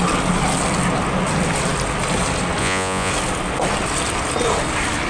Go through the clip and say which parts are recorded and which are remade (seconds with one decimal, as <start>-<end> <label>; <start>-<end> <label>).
0.0-2.6 recorded; 2.6-3.1 remade; 3.1-5.1 recorded

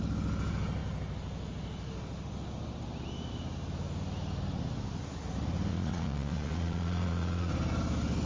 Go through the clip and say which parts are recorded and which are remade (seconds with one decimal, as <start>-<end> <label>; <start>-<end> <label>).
0.0-5.7 recorded; 5.7-7.5 remade; 7.5-8.3 recorded